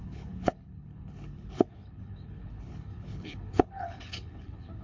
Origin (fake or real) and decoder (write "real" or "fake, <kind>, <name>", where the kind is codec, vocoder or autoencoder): fake, codec, HILCodec